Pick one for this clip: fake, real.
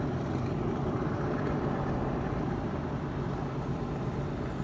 real